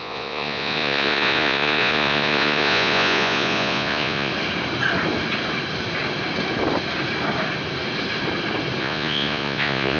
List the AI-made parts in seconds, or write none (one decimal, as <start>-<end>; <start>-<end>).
0.0-4.3; 8.8-10.0